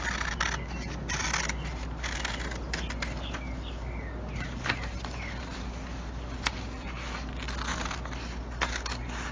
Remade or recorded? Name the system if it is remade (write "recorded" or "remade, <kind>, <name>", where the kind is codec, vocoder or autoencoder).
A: recorded